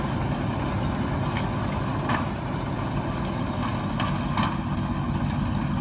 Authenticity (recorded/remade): recorded